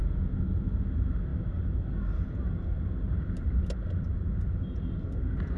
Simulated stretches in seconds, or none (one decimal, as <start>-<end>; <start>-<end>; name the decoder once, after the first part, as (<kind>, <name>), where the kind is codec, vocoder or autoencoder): none